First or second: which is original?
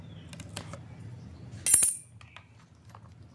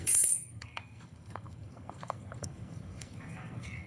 first